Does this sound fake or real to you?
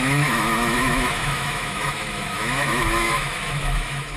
fake